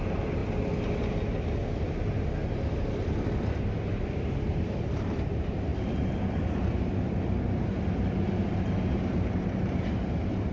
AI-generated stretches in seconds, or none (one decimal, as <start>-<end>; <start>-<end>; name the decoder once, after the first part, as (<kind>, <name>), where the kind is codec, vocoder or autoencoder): 0.0-0.4 (vocoder, BigVGAN v2); 4.7-5.7; 8.9-10.5